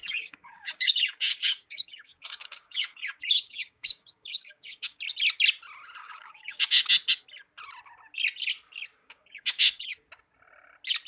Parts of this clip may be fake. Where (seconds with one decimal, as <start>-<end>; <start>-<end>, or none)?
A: 0.0-5.0; 6.0-6.9; 9.0-10.1